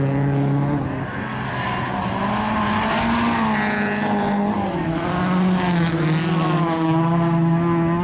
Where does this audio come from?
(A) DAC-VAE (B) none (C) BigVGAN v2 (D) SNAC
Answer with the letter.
B